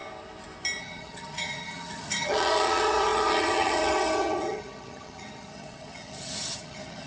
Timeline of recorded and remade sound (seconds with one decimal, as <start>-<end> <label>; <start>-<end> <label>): 0.0-0.8 recorded; 0.8-7.1 remade

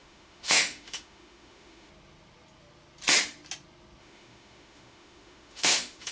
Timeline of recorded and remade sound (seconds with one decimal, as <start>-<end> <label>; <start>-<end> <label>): 0.0-1.9 remade; 1.9-4.0 recorded; 4.0-6.1 remade

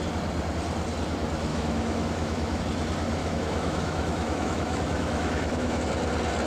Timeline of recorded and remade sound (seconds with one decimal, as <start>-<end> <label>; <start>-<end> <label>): 0.0-1.5 recorded; 1.5-2.6 remade; 2.6-3.2 recorded; 3.2-5.8 remade; 5.8-6.5 recorded

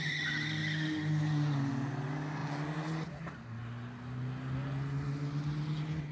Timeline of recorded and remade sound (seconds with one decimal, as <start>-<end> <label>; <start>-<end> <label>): 0.0-6.1 recorded